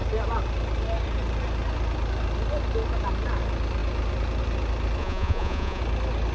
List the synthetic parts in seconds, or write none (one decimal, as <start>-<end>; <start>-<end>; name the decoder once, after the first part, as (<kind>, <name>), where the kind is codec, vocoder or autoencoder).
5.0-5.8 (vocoder, Vocos)